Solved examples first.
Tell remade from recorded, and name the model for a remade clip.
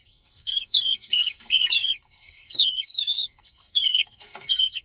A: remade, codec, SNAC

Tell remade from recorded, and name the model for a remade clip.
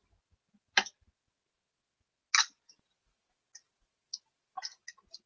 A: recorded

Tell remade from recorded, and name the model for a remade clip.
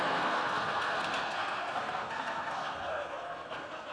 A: remade, codec, SNAC